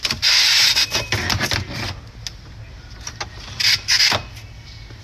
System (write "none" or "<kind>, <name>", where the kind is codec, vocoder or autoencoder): none